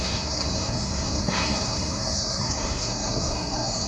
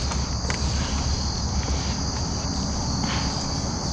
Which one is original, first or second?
second